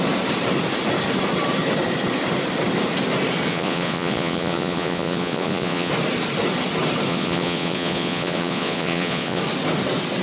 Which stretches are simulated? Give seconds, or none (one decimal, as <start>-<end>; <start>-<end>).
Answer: 3.5-5.9; 7.1-9.4